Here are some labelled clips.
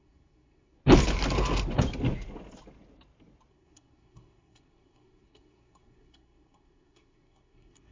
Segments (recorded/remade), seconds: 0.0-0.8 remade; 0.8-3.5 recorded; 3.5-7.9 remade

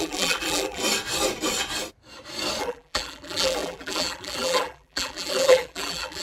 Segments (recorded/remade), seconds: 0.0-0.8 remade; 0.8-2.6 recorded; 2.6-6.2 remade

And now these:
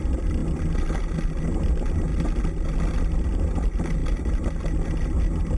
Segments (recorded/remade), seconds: 0.0-5.6 recorded